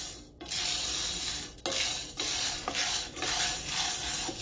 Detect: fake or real real